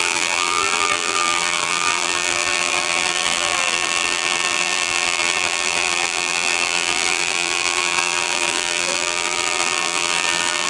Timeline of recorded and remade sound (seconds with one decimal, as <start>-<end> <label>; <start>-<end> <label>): 0.0-10.7 remade